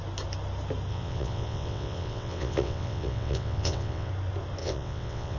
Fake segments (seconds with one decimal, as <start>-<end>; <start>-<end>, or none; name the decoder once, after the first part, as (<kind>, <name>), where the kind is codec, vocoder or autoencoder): 0.9-4.1 (vocoder, WaveNeXt); 4.6-5.4